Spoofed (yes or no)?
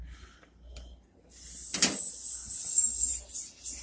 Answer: no